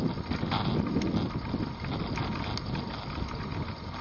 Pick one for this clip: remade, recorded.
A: recorded